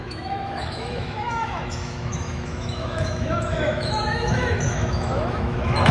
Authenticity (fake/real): fake